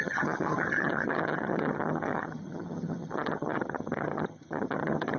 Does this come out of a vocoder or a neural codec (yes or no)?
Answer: yes